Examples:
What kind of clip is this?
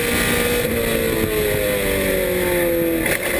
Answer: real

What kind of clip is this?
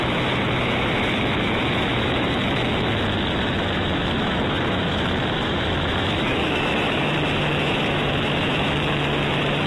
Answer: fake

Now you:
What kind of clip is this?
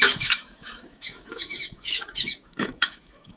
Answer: fake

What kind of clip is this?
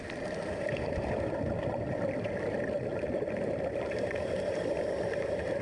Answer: real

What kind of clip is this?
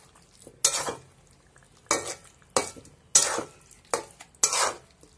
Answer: real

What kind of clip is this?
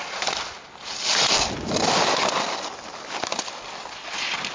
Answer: real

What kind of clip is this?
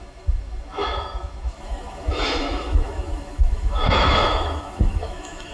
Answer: fake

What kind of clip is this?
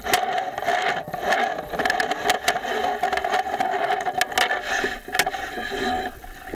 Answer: real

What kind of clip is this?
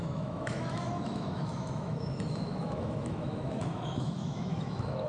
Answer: fake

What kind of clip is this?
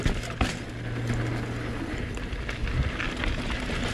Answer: real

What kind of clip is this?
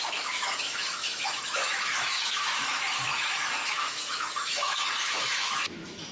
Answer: fake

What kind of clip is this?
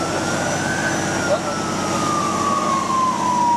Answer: real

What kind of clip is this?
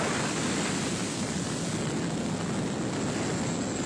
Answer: real